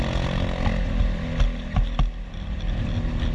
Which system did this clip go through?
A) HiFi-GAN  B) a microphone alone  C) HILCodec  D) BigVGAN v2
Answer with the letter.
B